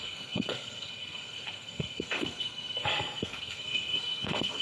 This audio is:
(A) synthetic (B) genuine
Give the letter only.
A